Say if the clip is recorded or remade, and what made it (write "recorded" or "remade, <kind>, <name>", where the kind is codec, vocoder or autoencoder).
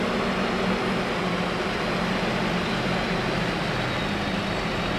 remade, vocoder, BigVGAN v2